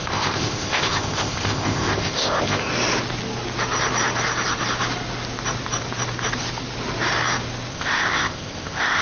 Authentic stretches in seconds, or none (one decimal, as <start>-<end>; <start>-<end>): 2.7-7.7